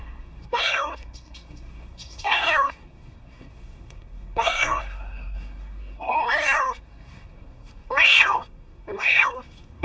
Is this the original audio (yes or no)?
no